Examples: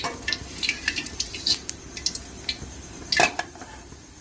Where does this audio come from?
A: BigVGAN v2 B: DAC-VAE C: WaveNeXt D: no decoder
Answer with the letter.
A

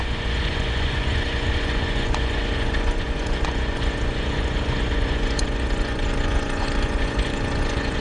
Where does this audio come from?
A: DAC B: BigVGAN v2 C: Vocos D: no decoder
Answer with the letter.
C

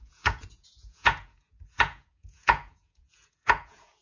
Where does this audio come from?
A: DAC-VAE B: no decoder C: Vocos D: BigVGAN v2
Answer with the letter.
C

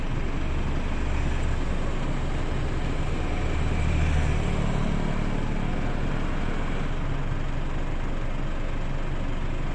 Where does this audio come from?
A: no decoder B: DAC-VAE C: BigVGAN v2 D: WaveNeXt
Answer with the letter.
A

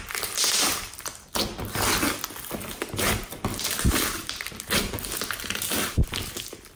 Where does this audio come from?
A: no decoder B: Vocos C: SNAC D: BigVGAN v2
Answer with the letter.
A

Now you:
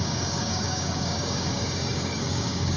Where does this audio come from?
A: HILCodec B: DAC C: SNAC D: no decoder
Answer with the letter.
B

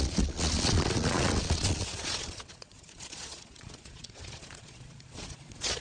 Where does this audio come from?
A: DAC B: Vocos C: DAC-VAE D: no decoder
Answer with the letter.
B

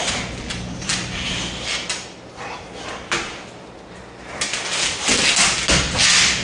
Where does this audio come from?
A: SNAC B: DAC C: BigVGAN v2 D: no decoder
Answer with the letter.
D